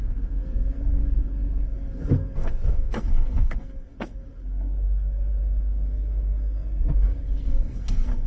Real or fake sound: fake